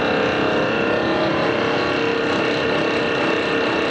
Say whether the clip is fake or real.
real